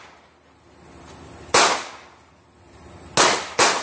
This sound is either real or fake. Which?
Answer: real